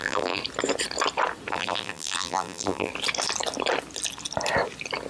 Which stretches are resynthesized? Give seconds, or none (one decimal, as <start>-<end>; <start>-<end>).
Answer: 0.0-0.4; 1.5-2.9